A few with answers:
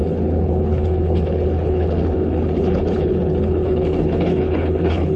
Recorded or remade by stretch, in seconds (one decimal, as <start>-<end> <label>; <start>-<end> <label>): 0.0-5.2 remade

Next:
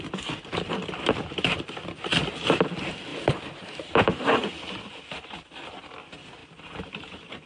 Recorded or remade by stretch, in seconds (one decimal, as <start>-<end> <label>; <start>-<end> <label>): 0.0-7.5 recorded

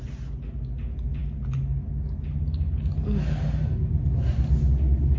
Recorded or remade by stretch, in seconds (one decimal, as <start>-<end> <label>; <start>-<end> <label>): 0.0-5.2 recorded